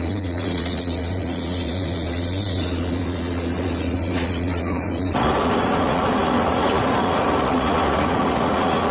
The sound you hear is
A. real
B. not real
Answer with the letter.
B